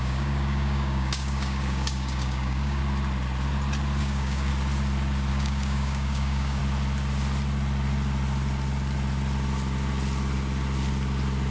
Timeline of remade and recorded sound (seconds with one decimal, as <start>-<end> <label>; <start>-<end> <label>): 0.0-2.8 remade; 2.8-4.0 recorded; 4.0-4.5 remade; 4.5-5.3 recorded; 5.3-6.6 remade; 6.6-11.5 recorded